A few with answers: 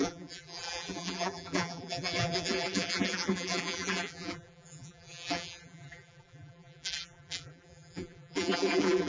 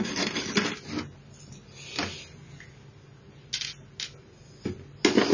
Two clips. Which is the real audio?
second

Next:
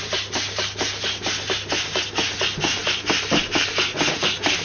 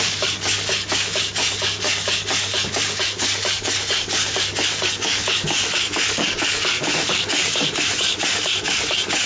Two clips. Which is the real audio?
first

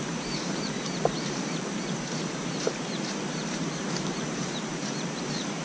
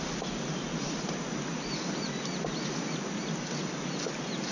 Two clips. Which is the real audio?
second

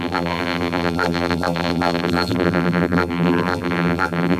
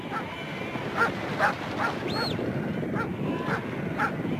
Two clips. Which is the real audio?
second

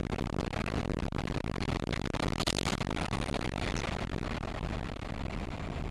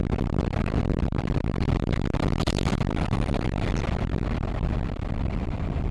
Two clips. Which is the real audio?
first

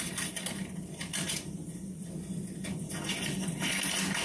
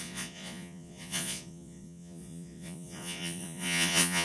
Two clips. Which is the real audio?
first